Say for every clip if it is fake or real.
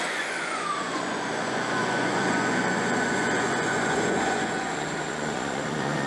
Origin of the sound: fake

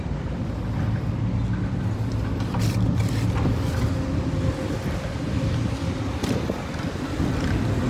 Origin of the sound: real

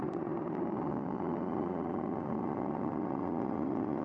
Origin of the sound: fake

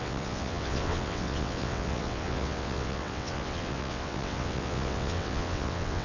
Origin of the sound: fake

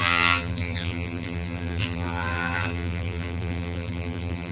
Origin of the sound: fake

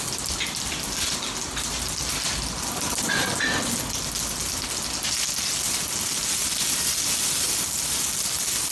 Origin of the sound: real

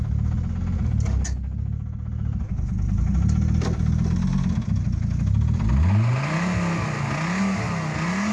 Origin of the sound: real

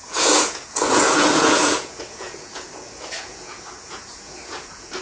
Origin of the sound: fake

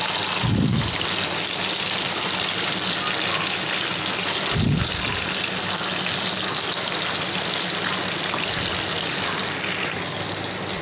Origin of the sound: real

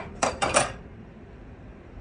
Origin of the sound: fake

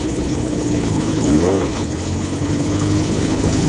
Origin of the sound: fake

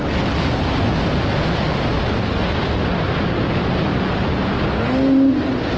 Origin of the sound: real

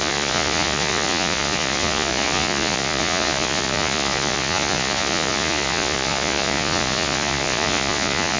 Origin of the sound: fake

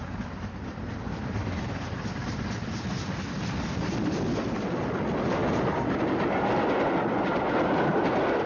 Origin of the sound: real